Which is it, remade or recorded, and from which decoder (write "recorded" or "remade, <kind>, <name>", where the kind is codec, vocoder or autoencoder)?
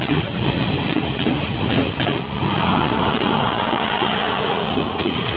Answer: remade, vocoder, Vocos